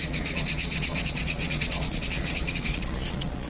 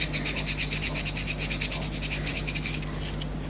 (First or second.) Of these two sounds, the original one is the second